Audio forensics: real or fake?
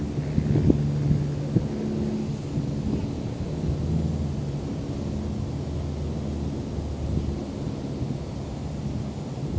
real